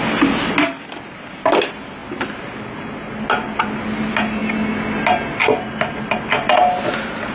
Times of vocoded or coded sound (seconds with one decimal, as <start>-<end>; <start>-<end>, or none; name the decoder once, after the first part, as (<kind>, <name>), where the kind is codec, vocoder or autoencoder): none